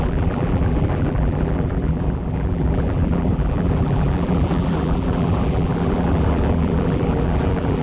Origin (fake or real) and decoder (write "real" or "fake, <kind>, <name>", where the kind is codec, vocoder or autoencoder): fake, vocoder, BigVGAN v2